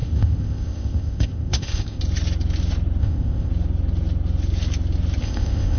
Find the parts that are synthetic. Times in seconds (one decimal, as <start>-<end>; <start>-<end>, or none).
0.0-2.0; 3.0-3.5; 5.2-5.8